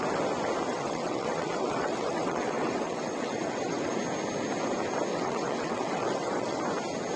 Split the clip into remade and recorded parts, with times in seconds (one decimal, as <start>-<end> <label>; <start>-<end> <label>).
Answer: 0.0-0.7 recorded; 0.7-3.9 remade; 3.9-5.1 recorded; 5.1-6.6 remade; 6.6-7.2 recorded